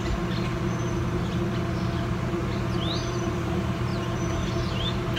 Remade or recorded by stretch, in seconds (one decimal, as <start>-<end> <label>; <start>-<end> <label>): 0.0-5.2 recorded